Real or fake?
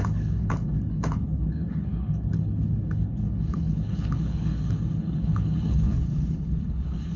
fake